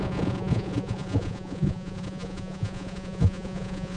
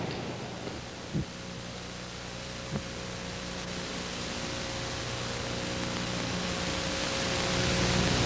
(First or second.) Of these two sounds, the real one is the second